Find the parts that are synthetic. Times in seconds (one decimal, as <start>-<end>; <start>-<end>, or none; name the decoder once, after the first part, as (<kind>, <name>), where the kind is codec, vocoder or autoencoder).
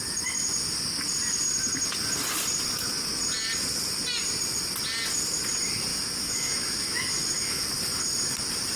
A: 5.9-7.6 (autoencoder, DAC-VAE)